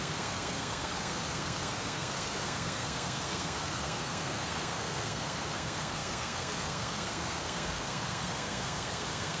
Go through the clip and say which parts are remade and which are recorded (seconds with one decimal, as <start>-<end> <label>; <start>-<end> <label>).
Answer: 0.0-9.4 remade